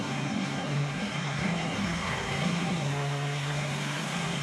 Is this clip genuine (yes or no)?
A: no